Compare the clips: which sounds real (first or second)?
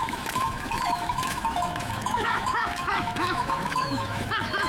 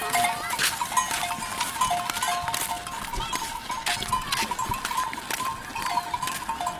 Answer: second